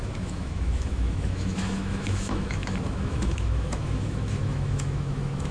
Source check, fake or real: fake